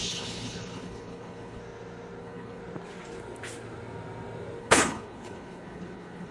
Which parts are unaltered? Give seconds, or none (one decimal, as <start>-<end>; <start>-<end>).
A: 1.6-2.2; 2.6-4.6